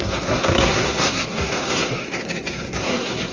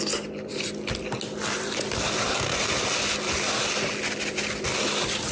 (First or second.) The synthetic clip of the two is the first